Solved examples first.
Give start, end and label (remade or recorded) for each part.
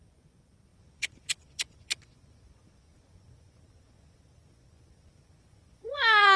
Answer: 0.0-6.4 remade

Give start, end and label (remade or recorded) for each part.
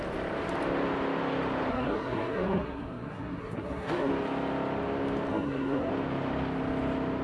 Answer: 0.0-1.7 recorded; 1.7-4.1 remade; 4.1-5.3 recorded; 5.3-5.9 remade; 5.9-7.2 recorded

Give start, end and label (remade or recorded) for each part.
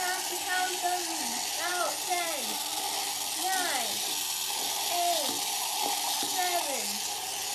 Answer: 0.0-7.5 recorded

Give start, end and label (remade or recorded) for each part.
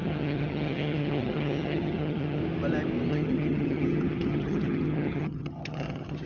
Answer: 0.0-2.4 remade; 2.4-3.1 recorded; 3.1-6.3 remade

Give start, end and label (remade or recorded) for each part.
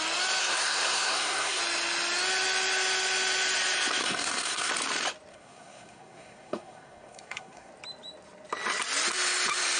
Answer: 0.0-0.4 recorded; 0.4-1.6 remade; 1.6-4.0 recorded; 4.0-4.7 remade; 4.7-5.3 recorded; 5.3-7.7 remade; 7.7-9.8 recorded